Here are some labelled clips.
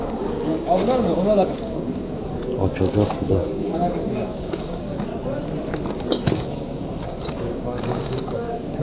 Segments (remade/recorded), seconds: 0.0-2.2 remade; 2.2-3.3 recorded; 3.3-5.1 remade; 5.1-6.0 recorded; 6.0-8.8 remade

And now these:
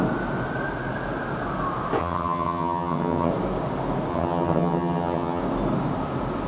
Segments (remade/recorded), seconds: 0.0-2.0 recorded; 2.0-3.3 remade; 3.3-4.1 recorded; 4.1-5.4 remade; 5.4-6.5 recorded

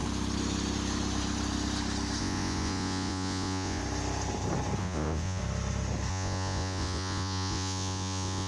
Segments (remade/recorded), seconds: 0.0-2.2 recorded; 2.2-3.8 remade; 3.8-4.8 recorded; 4.8-5.4 remade; 5.4-6.1 recorded; 6.1-8.5 remade

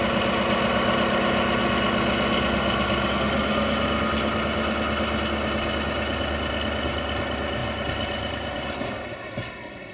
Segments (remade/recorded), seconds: 0.0-9.9 recorded

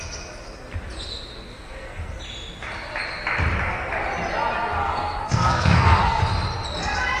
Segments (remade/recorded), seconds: 0.0-1.5 recorded; 1.5-2.2 remade; 2.2-4.8 recorded; 4.8-6.2 remade; 6.2-7.2 recorded